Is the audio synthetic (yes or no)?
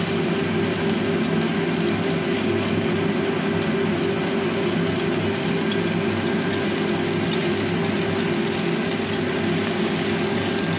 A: no